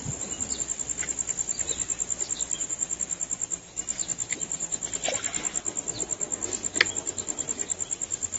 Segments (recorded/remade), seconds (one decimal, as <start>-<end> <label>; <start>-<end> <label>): 0.0-8.4 recorded